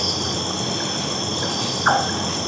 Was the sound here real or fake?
real